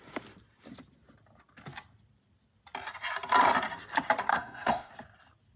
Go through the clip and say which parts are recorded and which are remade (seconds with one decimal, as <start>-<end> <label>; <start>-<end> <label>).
0.0-4.3 recorded; 4.3-4.9 remade; 4.9-5.6 recorded